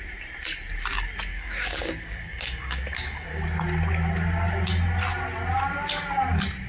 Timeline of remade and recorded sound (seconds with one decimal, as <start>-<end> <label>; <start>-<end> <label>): 0.0-1.3 recorded; 1.3-3.4 remade; 3.4-6.7 recorded